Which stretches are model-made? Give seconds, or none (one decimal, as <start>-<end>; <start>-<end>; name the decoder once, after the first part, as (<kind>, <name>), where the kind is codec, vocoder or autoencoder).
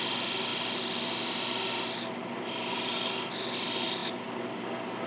none